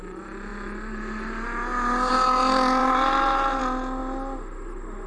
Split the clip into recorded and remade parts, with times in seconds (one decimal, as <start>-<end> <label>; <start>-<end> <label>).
0.0-2.8 recorded; 2.8-3.6 remade; 3.6-5.1 recorded